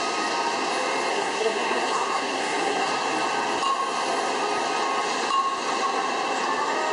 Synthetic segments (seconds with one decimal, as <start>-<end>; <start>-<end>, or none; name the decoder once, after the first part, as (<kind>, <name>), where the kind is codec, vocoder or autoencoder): 1.1-2.9 (codec, SNAC)